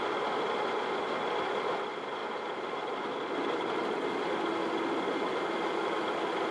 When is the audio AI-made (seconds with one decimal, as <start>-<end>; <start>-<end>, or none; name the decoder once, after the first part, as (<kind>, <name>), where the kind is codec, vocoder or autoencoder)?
2.2-4.2 (vocoder, BigVGAN v2)